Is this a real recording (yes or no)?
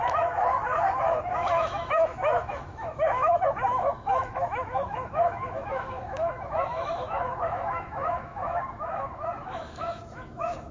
no